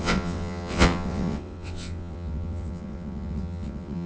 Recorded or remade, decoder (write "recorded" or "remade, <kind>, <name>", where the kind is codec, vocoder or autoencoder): remade, vocoder, WaveNeXt